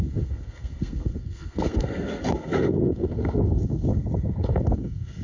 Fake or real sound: fake